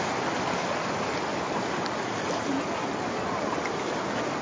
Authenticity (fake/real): real